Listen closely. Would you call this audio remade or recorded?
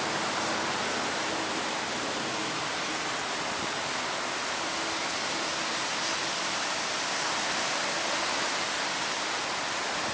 recorded